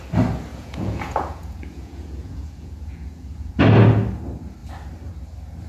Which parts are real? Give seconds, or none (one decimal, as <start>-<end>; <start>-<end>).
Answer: 0.0-0.5; 3.5-5.7